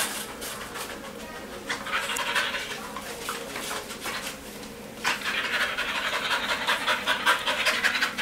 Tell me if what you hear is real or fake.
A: fake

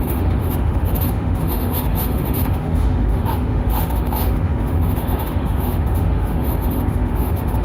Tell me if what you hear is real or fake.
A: fake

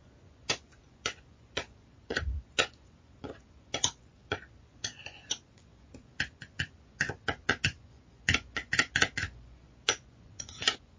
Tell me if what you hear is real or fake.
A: fake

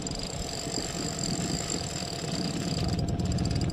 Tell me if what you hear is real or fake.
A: real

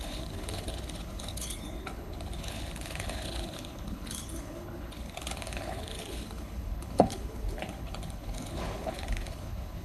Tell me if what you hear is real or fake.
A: fake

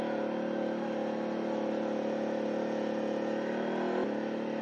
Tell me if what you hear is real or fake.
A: real